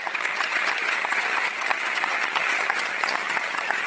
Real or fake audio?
fake